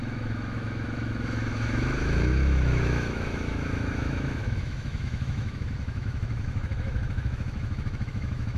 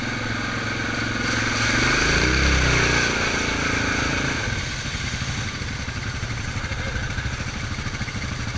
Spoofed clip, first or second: first